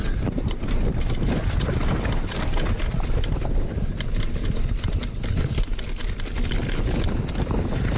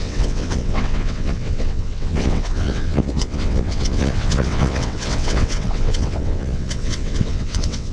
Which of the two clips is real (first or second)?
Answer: first